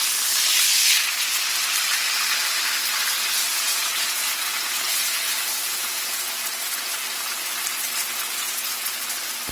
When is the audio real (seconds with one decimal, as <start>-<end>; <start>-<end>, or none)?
0.0-3.5; 6.9-8.4; 9.0-9.5